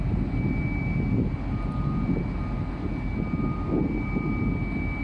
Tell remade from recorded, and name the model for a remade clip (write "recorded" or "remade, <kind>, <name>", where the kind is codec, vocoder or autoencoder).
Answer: recorded